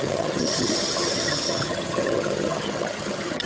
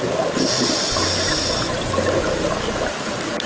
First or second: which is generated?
first